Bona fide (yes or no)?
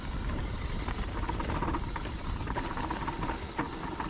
yes